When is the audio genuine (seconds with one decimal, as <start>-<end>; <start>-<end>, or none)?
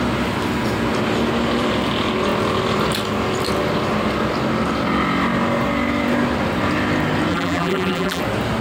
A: 0.0-7.3; 8.2-8.6